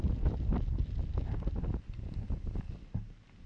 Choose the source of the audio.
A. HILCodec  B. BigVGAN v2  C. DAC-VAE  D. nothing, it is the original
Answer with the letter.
D